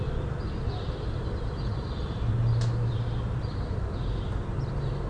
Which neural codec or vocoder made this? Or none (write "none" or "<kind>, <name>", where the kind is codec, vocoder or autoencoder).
none